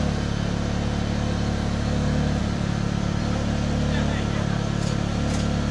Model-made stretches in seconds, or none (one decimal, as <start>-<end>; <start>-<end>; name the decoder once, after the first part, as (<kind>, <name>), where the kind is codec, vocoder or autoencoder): 2.4-3.2 (vocoder, BigVGAN v2)